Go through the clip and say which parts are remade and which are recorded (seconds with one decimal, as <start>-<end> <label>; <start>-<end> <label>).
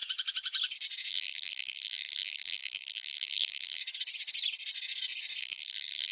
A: 0.0-1.1 recorded; 1.1-3.8 remade; 3.8-5.4 recorded; 5.4-6.1 remade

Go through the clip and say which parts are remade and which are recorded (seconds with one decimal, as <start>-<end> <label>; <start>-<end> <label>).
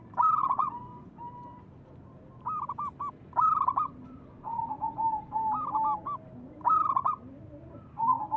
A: 0.0-0.4 recorded; 0.4-1.1 remade; 1.1-8.4 recorded